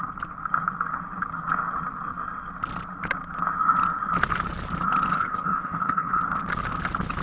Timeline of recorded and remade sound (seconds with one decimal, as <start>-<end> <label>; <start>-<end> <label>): 0.0-5.1 recorded; 5.1-6.2 remade; 6.2-7.2 recorded